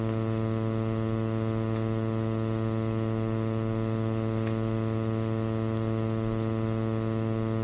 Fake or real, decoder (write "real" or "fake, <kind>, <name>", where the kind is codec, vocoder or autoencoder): real